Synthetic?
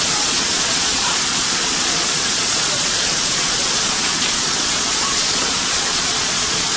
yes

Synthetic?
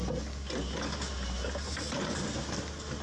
no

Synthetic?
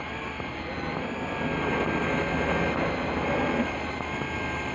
no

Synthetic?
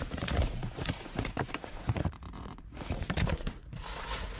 yes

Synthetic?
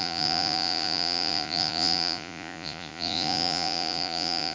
yes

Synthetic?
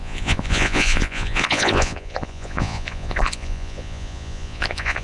yes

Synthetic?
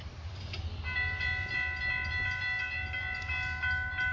no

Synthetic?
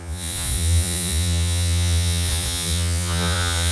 yes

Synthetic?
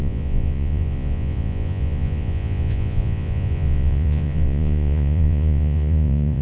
yes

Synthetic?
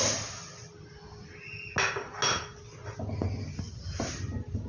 no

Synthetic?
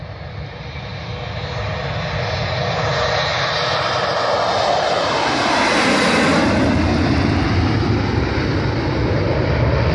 no